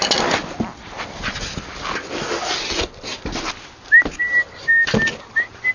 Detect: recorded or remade recorded